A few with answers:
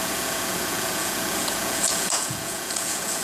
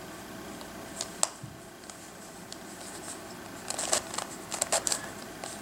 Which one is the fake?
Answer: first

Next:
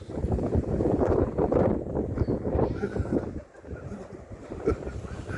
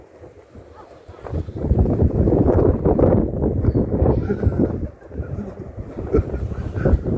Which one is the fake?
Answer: first